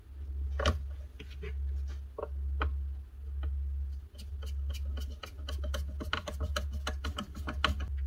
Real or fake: real